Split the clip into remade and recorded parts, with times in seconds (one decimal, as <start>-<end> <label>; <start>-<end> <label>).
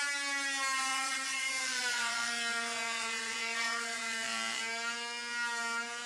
0.0-0.9 recorded; 0.9-4.6 remade; 4.6-6.1 recorded